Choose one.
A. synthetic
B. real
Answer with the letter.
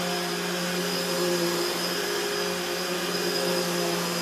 B